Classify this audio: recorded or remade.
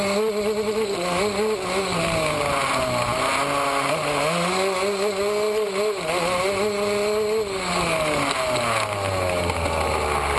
recorded